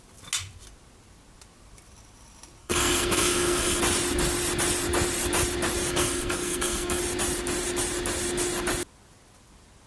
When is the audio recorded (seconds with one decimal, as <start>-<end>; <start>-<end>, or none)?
0.0-2.6; 3.8-5.9; 7.0-9.9